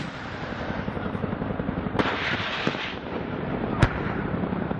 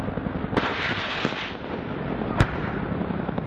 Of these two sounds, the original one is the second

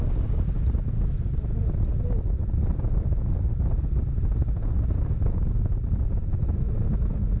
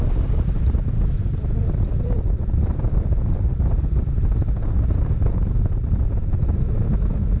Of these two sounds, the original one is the first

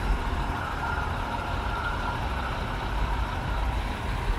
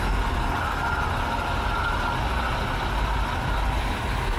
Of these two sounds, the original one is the second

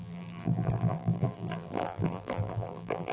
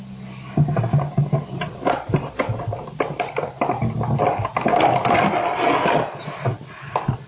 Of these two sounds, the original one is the second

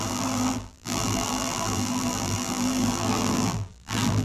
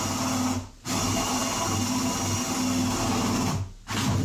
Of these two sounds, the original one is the second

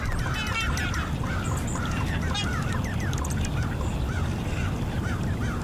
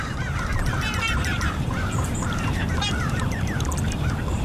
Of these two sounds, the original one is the first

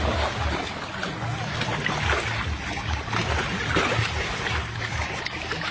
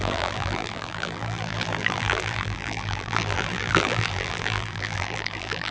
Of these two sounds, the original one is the first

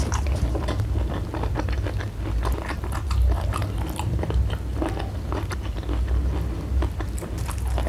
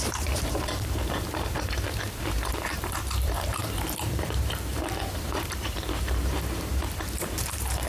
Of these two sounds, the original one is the first